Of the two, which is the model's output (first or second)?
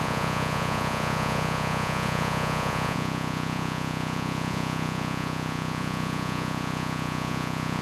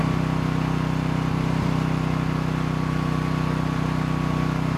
first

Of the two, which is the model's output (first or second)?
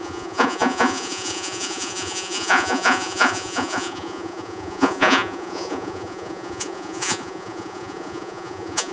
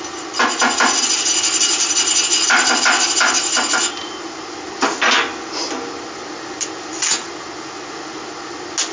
first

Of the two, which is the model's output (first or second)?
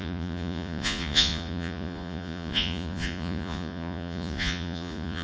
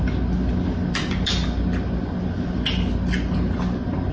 first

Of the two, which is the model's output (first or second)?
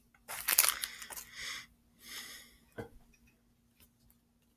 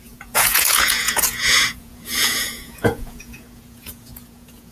second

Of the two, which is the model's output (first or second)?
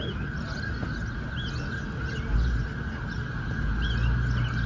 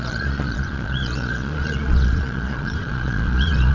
second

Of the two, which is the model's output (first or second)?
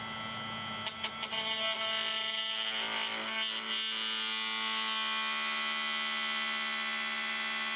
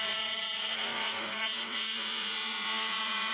second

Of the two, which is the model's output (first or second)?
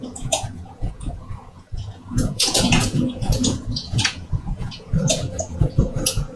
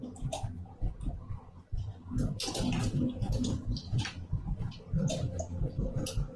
first